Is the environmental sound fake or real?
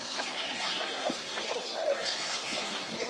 fake